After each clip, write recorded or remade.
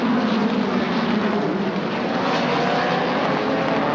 recorded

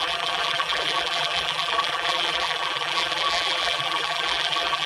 remade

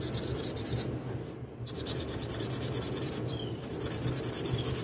recorded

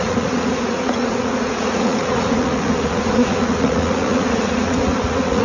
remade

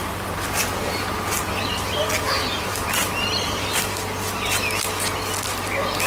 recorded